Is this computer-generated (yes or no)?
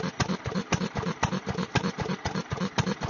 no